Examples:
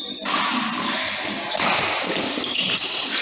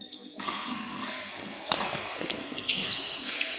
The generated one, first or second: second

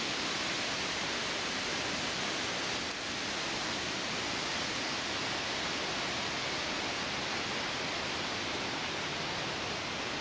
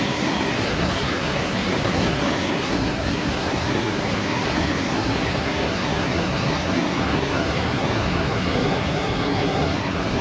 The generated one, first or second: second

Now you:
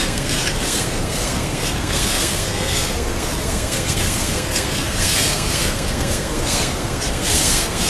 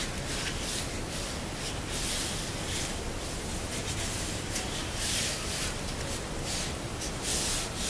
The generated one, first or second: first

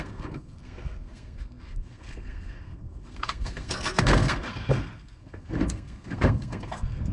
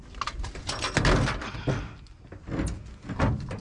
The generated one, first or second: first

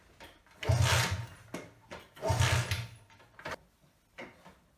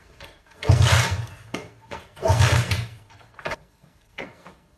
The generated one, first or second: second